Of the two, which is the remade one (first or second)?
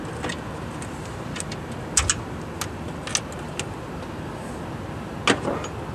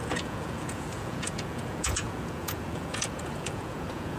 second